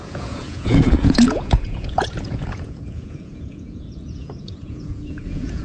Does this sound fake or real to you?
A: fake